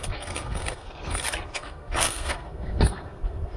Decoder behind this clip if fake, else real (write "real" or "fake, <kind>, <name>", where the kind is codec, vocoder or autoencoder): fake, codec, SNAC